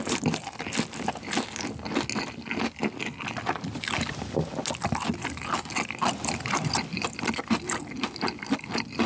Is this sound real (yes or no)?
yes